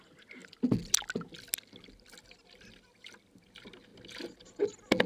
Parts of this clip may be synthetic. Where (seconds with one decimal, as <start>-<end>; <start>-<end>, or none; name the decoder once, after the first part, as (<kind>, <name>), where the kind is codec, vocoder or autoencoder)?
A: none